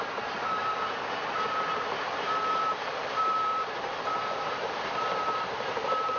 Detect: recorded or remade remade